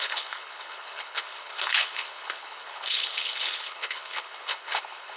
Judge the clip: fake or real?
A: fake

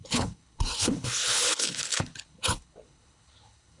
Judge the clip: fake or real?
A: fake